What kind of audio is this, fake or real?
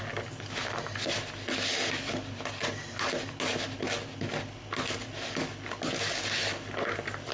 real